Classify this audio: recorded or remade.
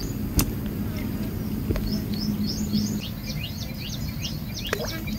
recorded